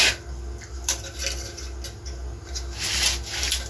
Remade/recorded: recorded